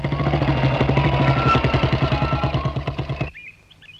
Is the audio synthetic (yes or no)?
no